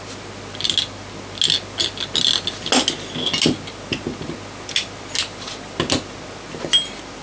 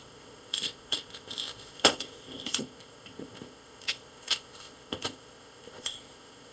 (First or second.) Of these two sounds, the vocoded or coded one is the second